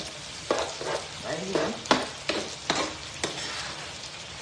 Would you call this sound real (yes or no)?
yes